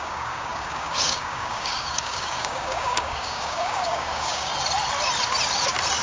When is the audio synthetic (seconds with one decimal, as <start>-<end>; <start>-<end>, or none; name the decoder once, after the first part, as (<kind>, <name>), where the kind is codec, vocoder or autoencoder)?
0.0-4.5 (codec, DAC)